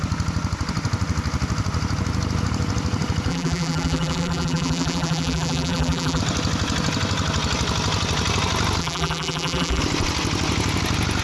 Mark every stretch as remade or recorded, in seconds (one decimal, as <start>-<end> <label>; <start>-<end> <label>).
0.0-3.3 recorded; 3.3-6.2 remade; 6.2-8.8 recorded; 8.8-9.8 remade; 9.8-11.2 recorded